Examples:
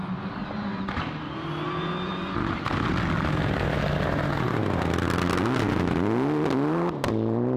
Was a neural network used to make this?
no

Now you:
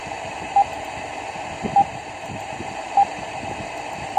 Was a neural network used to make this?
no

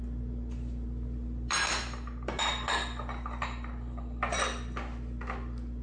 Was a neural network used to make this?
no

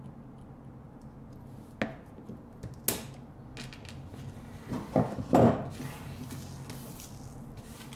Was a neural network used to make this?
no